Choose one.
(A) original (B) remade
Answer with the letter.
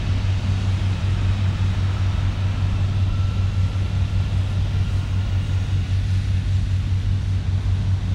A